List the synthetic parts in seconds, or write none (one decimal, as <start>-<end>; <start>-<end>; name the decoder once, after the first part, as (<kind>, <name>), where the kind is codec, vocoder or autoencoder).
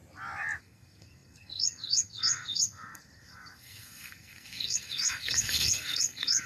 0.6-6.5 (codec, SNAC)